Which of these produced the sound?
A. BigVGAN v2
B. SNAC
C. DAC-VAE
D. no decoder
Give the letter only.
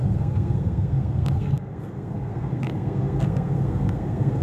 B